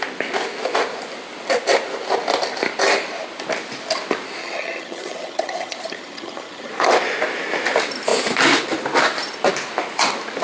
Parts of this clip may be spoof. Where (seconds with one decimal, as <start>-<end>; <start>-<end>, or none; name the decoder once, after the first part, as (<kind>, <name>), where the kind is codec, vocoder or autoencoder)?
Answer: 4.4-6.7 (vocoder, HiFi-GAN)